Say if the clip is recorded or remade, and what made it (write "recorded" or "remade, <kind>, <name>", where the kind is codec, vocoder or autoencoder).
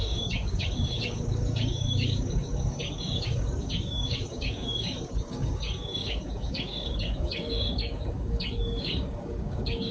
remade, codec, DAC